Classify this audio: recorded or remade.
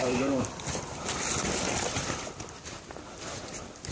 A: recorded